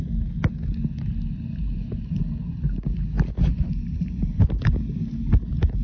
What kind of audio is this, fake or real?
real